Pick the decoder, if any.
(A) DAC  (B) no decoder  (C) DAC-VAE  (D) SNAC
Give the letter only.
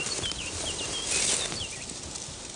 B